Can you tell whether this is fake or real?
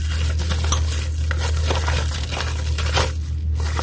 real